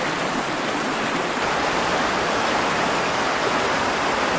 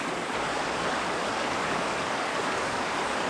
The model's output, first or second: second